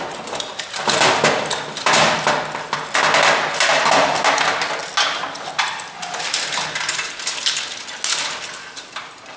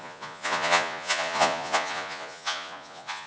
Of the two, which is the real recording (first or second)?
first